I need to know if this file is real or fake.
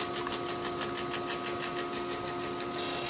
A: real